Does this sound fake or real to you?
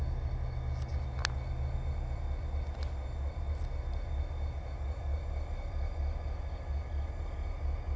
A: real